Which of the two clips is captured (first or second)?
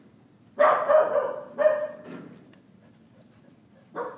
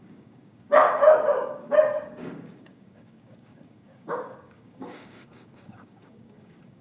first